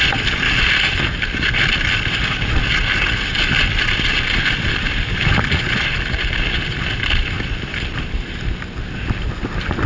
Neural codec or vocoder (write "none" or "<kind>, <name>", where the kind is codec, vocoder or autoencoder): none